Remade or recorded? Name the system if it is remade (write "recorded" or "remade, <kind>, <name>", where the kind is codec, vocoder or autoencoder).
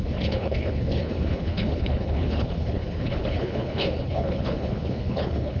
remade, codec, HILCodec